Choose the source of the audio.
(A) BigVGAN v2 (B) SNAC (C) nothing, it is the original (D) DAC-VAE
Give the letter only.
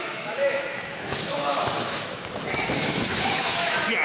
D